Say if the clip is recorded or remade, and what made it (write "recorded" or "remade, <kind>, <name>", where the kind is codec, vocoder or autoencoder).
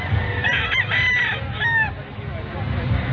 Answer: recorded